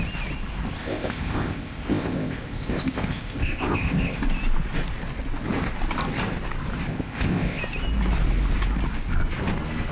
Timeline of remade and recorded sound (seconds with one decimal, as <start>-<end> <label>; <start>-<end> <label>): 0.0-0.8 recorded; 0.8-4.2 remade; 4.2-6.9 recorded; 6.9-7.6 remade; 7.6-9.9 recorded